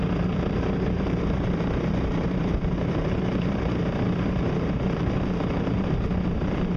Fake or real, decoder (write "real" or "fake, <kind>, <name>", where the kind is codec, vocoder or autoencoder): fake, vocoder, BigVGAN v2